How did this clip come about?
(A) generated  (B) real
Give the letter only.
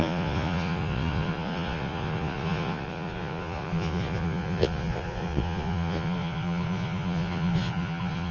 A